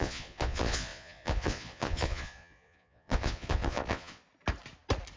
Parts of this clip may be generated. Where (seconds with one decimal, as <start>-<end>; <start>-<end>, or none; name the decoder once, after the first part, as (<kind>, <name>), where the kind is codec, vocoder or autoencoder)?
0.0-4.2 (vocoder, Vocos)